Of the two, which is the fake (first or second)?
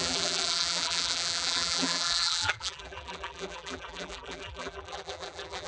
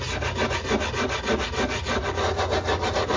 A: first